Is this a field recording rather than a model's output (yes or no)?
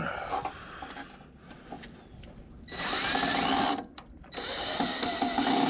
yes